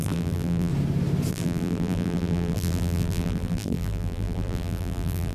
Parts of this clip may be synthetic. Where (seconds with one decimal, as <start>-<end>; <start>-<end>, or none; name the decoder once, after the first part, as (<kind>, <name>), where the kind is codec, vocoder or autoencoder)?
0.0-0.7 (vocoder, BigVGAN v2); 1.3-5.3